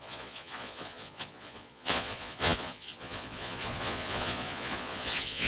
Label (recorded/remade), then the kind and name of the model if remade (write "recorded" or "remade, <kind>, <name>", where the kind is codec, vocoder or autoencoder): remade, vocoder, Vocos